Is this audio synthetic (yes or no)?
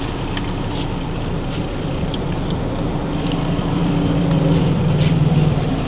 yes